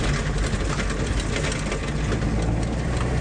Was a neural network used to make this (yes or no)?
no